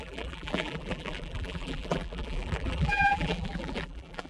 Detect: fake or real fake